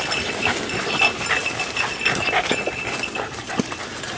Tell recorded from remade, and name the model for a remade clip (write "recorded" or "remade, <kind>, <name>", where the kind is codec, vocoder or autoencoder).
recorded